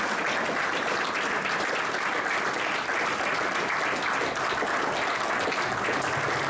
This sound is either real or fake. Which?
real